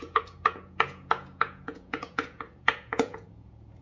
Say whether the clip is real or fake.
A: fake